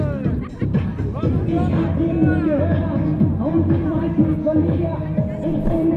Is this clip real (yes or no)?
yes